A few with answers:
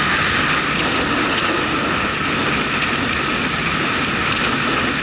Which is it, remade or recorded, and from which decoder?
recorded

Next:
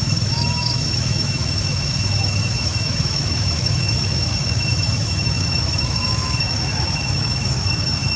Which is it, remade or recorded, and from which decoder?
remade, autoencoder, DAC-VAE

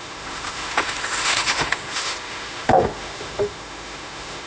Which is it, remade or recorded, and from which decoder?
remade, autoencoder, DAC-VAE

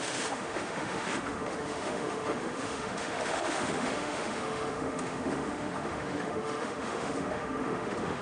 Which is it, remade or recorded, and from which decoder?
remade, autoencoder, DAC-VAE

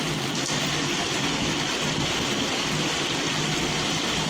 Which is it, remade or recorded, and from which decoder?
recorded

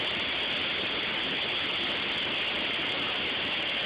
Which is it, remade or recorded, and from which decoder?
recorded